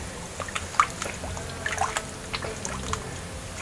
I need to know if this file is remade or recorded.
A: recorded